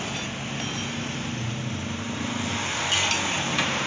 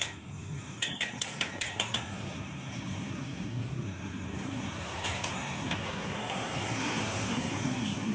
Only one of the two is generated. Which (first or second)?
second